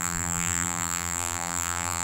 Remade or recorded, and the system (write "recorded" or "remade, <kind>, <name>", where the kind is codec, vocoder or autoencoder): remade, vocoder, BigVGAN v2